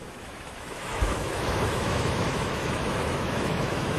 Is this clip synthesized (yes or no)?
yes